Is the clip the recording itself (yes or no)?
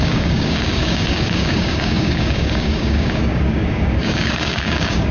no